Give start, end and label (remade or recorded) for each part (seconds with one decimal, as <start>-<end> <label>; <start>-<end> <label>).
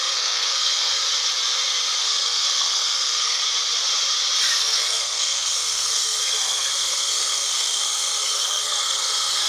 0.0-1.0 remade; 1.0-2.0 recorded; 2.0-3.4 remade; 3.4-4.6 recorded; 4.6-9.5 remade